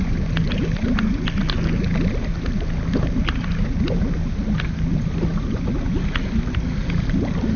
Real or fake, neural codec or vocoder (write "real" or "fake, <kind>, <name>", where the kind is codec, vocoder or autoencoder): real